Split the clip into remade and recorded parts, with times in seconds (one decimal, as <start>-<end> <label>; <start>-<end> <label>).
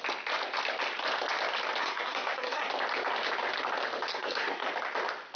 0.0-1.8 recorded; 1.8-2.7 remade; 2.7-4.1 recorded; 4.1-4.7 remade; 4.7-5.4 recorded